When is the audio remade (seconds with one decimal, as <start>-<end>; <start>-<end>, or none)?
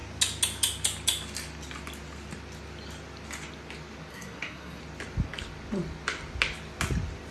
4.1-4.8